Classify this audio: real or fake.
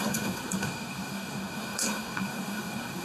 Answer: fake